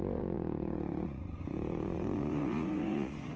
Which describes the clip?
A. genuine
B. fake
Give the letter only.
B